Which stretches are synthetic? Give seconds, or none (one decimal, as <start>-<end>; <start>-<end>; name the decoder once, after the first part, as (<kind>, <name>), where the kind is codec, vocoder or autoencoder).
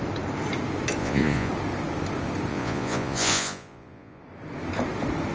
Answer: 1.0-1.5 (vocoder, Vocos); 2.5-4.2